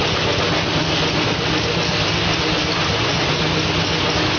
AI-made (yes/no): no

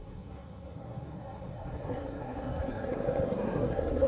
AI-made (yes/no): yes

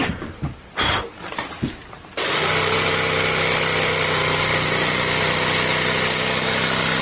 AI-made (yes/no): no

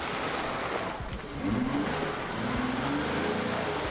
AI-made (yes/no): no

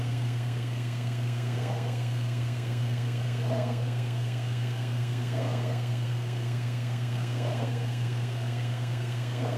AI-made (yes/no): yes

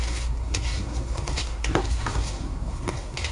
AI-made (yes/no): yes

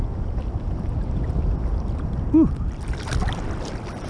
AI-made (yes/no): no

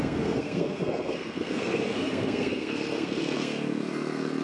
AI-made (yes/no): yes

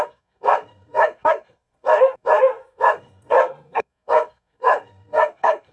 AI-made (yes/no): yes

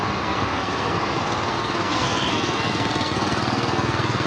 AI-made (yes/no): yes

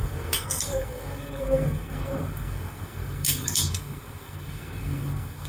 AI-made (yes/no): yes